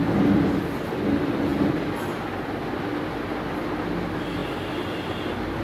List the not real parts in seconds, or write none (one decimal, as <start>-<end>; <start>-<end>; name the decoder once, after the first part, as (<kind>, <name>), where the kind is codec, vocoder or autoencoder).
none